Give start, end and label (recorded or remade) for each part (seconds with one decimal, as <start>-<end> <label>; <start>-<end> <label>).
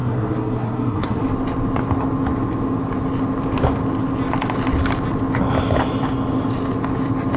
0.0-1.2 remade; 1.2-7.4 recorded